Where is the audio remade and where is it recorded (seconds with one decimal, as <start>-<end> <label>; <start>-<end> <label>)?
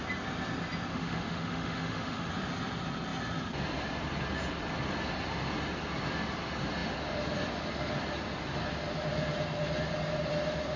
0.0-0.9 recorded; 0.9-2.3 remade; 2.3-10.8 recorded